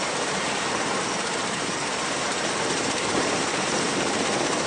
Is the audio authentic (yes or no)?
no